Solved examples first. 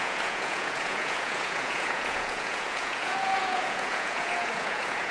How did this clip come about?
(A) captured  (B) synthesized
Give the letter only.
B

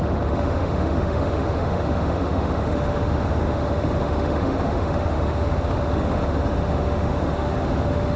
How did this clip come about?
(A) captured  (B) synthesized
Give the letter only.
B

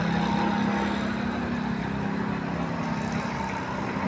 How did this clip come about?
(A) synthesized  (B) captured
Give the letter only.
B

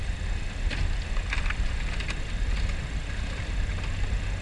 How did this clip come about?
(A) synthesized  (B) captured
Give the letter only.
B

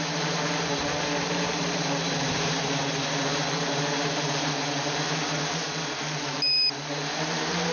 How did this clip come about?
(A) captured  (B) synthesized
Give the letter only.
B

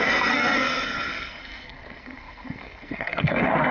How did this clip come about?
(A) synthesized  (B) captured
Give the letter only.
A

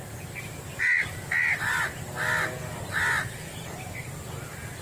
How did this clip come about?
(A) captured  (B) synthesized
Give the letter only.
A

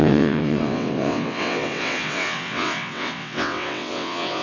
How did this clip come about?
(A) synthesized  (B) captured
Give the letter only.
A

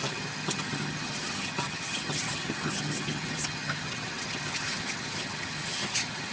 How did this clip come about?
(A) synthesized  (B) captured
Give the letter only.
A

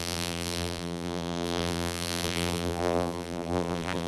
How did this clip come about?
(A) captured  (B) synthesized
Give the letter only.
B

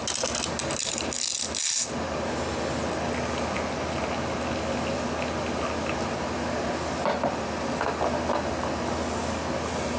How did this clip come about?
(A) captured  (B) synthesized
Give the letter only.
A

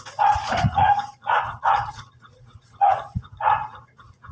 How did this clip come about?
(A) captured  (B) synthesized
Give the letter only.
B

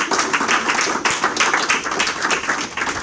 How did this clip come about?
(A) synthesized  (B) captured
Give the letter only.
B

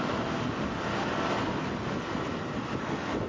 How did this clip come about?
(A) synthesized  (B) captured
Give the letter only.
B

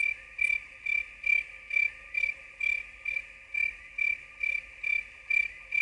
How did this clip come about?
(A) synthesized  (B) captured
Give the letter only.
B